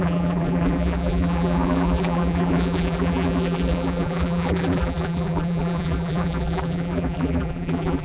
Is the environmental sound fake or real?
fake